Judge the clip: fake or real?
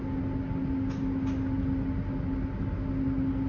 real